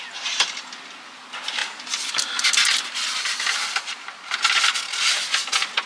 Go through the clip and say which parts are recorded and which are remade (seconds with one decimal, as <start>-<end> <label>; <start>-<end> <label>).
0.0-5.9 recorded

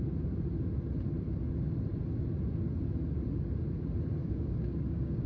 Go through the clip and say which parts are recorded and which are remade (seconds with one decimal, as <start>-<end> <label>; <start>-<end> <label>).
0.0-4.2 recorded; 4.2-5.3 remade

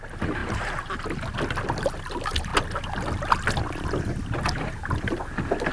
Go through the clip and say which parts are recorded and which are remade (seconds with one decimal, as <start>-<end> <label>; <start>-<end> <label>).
0.0-0.4 recorded; 0.4-1.0 remade; 1.0-5.7 recorded

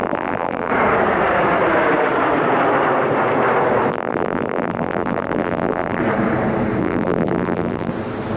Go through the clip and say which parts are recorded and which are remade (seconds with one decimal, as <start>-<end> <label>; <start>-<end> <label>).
0.0-0.7 remade; 0.7-3.9 recorded; 3.9-6.0 remade; 6.0-6.8 recorded; 6.8-7.9 remade; 7.9-8.4 recorded

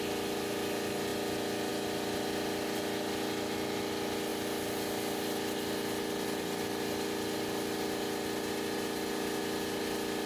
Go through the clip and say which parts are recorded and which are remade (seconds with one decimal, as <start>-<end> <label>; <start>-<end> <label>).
0.0-10.3 recorded

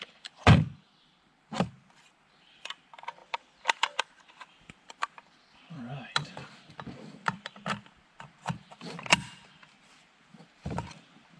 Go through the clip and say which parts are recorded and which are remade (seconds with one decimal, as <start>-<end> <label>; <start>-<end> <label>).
0.0-11.4 remade

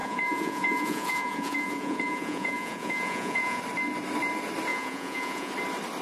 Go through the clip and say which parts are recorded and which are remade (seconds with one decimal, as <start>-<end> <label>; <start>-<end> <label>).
0.0-3.6 remade; 3.6-4.7 recorded; 4.7-5.5 remade; 5.5-6.0 recorded

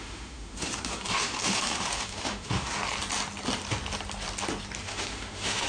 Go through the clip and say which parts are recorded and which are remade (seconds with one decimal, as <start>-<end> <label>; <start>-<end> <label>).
0.0-2.8 remade; 2.8-4.8 recorded; 4.8-5.7 remade